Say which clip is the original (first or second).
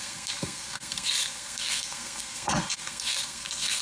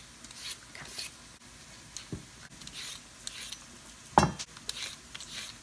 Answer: second